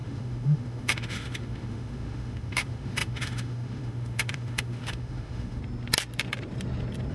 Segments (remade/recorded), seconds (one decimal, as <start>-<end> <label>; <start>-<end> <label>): 0.0-5.6 remade; 5.6-7.1 recorded